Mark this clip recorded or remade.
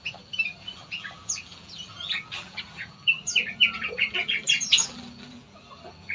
remade